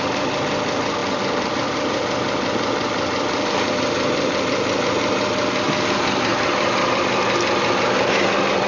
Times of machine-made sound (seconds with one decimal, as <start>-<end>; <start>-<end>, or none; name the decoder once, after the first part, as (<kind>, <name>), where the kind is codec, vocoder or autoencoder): none